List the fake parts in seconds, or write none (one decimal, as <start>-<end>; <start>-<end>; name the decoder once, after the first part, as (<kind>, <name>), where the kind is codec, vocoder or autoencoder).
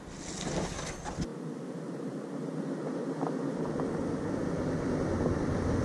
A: none